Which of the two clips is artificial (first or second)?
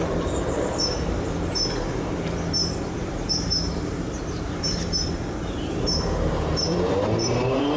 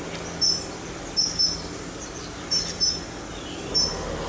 first